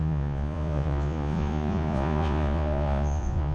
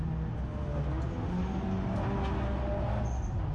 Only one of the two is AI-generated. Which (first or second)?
first